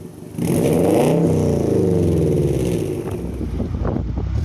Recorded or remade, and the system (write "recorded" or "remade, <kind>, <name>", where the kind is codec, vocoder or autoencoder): recorded